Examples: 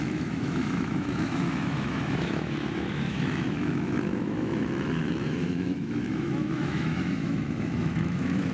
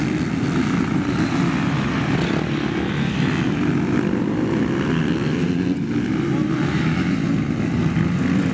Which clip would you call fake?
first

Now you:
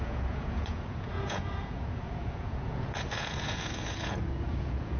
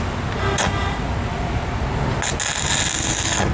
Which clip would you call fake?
first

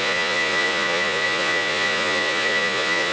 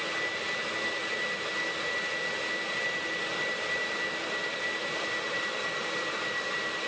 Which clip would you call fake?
first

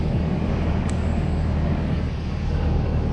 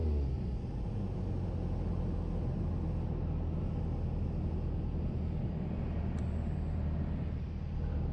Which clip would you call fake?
first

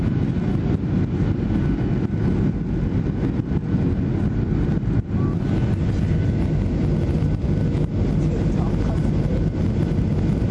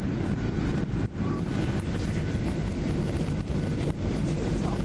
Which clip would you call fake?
second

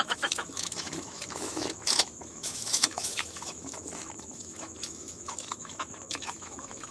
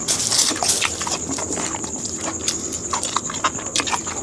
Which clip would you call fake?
first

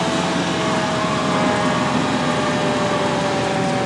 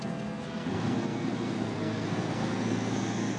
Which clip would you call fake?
second